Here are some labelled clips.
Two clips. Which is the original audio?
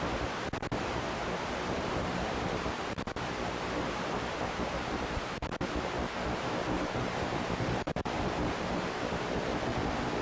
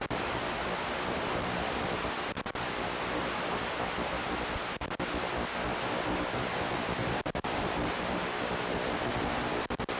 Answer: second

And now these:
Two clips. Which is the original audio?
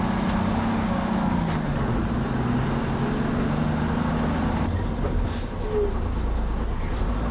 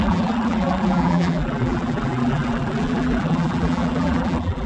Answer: first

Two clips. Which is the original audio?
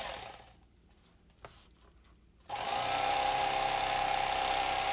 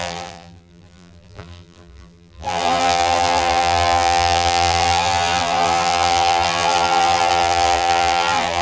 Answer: first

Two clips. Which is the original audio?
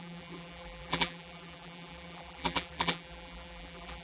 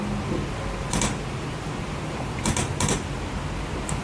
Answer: second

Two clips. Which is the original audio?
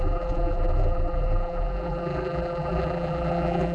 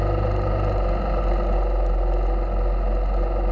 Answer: second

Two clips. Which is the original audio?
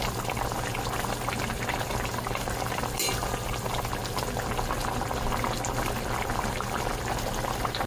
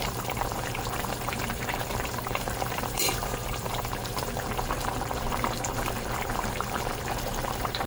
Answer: first